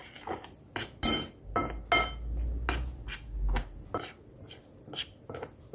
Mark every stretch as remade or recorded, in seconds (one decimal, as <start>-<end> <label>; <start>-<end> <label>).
0.0-5.7 recorded